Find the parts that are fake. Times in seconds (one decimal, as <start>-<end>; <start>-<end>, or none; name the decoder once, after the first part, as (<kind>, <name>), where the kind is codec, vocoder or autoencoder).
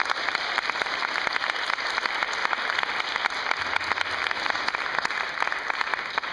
none